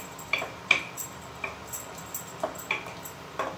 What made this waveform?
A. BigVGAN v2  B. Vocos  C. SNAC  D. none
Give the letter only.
A